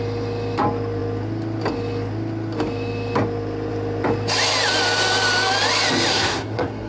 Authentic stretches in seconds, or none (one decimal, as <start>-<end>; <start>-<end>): 0.0-6.1